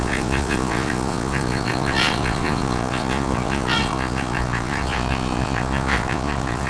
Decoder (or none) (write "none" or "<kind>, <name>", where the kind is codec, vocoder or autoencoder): vocoder, Vocos